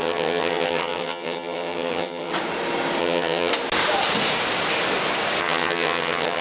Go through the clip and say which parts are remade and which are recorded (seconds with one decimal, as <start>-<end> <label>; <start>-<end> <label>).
0.0-2.3 remade; 2.3-3.0 recorded; 3.0-3.5 remade; 3.5-5.4 recorded; 5.4-6.4 remade